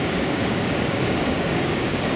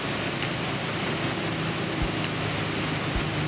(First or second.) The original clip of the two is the second